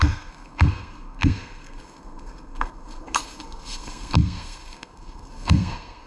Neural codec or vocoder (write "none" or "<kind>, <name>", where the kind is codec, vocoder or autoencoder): codec, SNAC